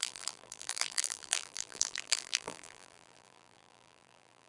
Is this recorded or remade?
remade